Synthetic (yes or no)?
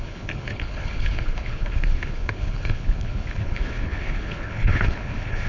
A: yes